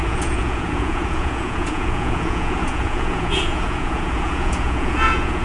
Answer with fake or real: fake